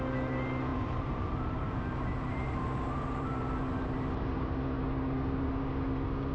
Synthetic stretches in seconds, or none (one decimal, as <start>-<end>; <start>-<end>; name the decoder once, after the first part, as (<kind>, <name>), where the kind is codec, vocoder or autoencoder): 0.7-3.4 (vocoder, BigVGAN v2)